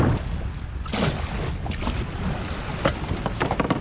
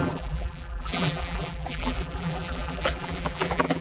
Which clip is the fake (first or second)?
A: second